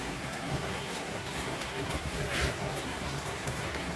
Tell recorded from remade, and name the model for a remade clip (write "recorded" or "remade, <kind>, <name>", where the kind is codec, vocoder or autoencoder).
remade, codec, SNAC